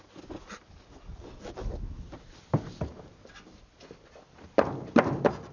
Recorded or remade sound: recorded